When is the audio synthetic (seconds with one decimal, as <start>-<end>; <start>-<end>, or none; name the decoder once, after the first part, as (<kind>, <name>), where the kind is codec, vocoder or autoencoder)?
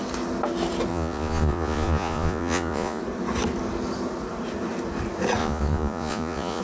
0.9-3.0 (vocoder, Vocos); 5.4-6.6